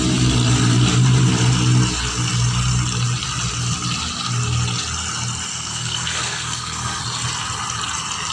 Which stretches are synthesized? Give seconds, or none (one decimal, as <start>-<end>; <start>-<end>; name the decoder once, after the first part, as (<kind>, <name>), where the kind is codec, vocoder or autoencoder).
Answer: 5.5-7.0 (codec, SNAC)